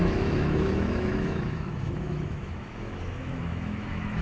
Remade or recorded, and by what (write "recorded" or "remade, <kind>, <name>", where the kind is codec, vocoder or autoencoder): remade, autoencoder, DAC-VAE